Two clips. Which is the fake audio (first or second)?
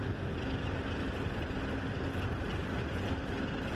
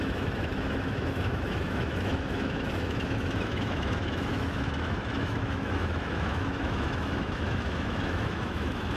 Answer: second